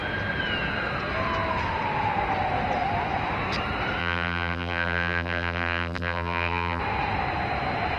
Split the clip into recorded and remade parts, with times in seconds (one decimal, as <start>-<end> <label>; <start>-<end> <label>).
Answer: 0.0-4.0 recorded; 4.0-6.8 remade; 6.8-8.0 recorded